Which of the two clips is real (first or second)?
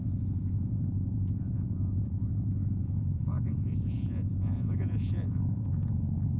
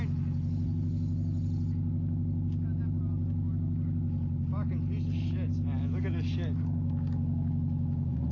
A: second